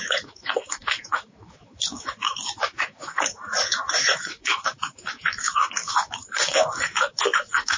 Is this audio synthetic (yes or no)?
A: yes